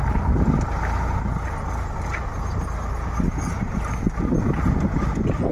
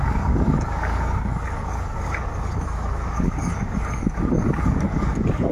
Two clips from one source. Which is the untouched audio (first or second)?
first